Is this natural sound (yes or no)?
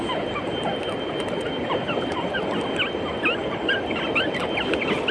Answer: yes